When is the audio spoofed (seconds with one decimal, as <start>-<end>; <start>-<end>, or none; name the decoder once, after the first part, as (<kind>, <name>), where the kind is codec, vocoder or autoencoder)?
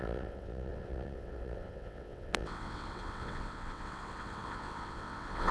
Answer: 0.0-5.5 (vocoder, WaveNeXt)